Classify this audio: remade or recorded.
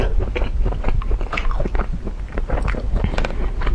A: recorded